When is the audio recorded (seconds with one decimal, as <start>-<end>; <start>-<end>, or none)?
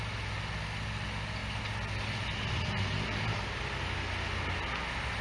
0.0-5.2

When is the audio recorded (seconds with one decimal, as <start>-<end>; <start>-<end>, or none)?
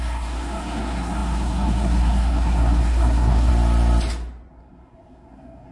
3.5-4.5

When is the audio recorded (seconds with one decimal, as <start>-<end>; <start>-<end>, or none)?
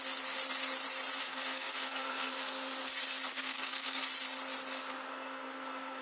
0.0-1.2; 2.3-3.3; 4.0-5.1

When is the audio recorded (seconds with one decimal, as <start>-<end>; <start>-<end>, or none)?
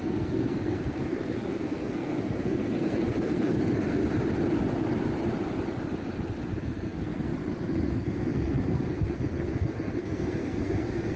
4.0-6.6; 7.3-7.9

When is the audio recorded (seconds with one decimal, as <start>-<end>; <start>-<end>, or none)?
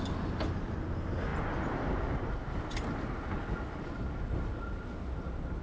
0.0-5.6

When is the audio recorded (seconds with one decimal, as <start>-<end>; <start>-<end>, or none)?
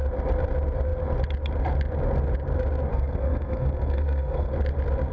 0.0-2.9; 4.5-5.1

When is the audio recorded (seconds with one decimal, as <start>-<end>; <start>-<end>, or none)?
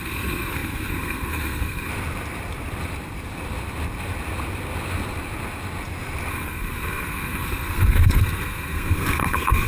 1.9-6.3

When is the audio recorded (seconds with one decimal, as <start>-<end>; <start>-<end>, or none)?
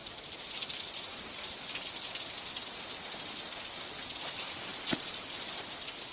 0.0-6.1